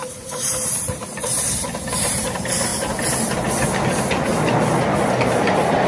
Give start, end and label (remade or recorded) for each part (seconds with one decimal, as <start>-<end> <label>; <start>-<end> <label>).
0.0-2.7 remade; 2.7-4.0 recorded; 4.0-5.9 remade